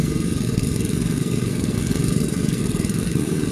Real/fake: fake